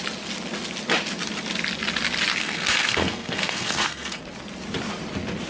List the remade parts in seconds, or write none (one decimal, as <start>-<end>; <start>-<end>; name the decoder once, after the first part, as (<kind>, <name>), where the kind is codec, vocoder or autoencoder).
2.4-4.2 (codec, SNAC)